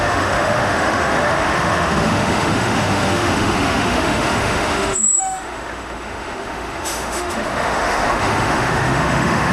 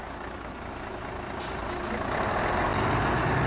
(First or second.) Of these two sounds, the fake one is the first